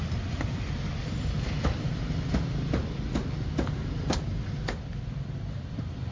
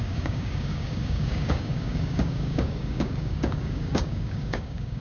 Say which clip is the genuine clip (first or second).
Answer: first